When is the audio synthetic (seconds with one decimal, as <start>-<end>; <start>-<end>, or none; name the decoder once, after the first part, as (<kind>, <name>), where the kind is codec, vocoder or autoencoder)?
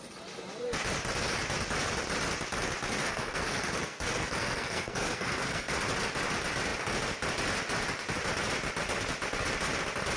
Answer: 3.0-5.7 (codec, SNAC)